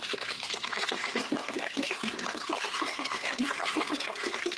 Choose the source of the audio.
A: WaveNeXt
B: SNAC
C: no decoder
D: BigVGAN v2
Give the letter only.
B